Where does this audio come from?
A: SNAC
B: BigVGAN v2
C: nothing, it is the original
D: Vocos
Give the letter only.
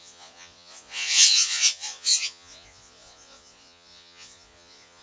D